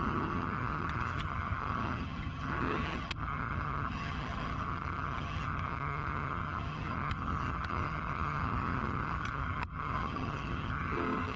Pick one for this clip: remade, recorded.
remade